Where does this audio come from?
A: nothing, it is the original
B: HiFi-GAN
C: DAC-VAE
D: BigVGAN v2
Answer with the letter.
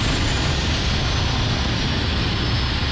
A